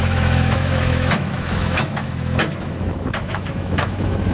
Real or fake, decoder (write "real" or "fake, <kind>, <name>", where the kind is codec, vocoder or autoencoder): fake, autoencoder, DAC-VAE